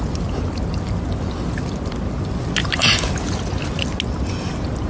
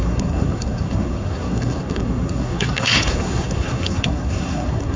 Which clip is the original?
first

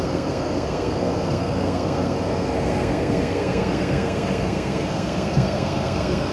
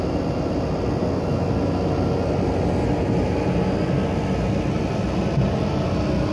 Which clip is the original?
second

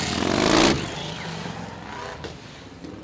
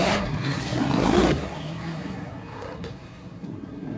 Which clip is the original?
first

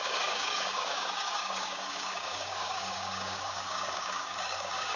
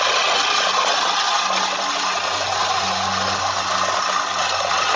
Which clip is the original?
second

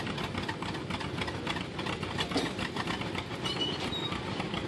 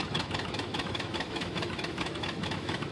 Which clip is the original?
first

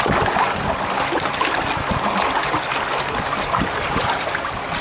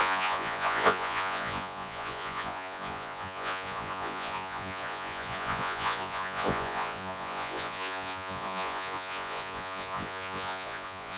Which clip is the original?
first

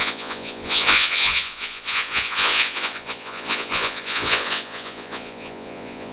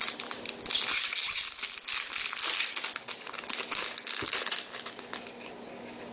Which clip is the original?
second